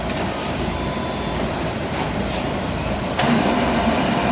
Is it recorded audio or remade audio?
remade